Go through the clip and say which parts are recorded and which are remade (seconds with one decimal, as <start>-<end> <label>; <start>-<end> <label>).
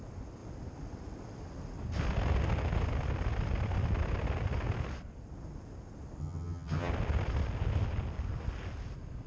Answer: 0.0-6.2 recorded; 6.2-6.9 remade; 6.9-9.3 recorded